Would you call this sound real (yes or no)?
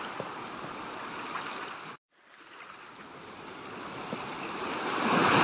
yes